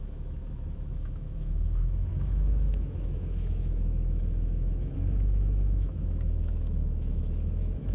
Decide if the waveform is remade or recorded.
remade